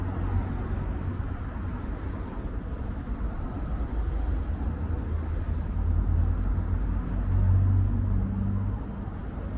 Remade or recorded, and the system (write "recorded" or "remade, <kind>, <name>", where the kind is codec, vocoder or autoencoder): recorded